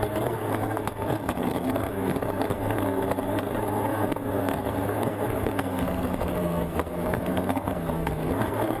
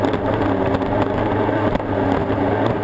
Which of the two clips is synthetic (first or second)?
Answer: first